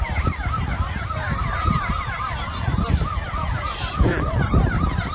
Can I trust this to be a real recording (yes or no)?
no